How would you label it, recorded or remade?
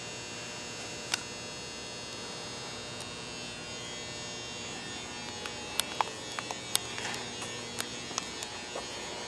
recorded